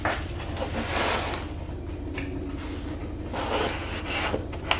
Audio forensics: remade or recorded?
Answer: recorded